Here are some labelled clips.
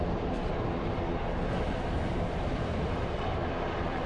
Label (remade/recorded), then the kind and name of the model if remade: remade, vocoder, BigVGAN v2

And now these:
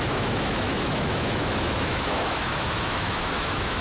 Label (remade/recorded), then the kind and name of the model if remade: remade, autoencoder, DAC-VAE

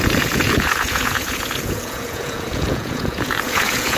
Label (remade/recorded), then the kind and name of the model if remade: remade, vocoder, Vocos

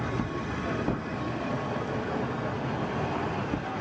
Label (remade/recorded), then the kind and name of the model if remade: recorded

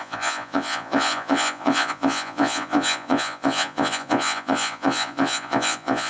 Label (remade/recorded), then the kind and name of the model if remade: remade, vocoder, Vocos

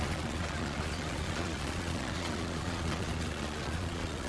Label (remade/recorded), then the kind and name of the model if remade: remade, vocoder, Vocos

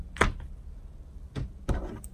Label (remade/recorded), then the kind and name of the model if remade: recorded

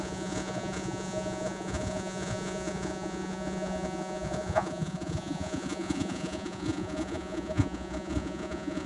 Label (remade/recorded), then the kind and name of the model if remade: remade, vocoder, Vocos